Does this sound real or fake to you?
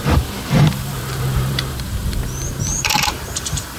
fake